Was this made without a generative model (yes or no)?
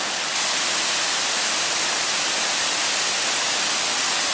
yes